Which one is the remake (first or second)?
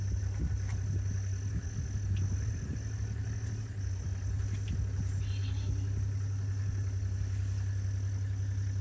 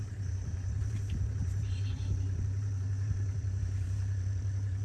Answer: second